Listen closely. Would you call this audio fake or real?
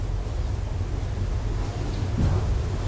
real